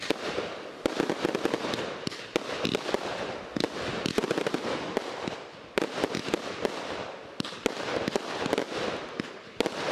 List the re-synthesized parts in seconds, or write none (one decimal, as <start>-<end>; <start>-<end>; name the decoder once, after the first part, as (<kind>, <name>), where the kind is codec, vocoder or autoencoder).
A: none